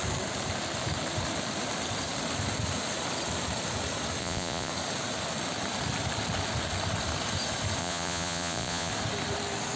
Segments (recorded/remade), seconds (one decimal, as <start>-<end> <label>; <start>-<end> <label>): 0.0-4.2 recorded; 4.2-4.7 remade; 4.7-7.8 recorded; 7.8-8.9 remade; 8.9-9.8 recorded